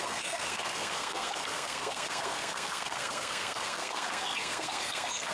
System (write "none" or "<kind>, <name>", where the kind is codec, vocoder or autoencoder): codec, SNAC